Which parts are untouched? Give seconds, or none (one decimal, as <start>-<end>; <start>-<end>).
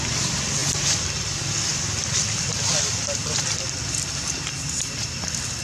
0.0-5.6